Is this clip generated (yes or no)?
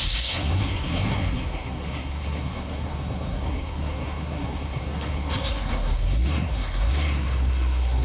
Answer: yes